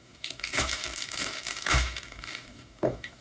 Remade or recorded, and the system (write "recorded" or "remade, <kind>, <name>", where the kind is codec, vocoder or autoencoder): remade, codec, DAC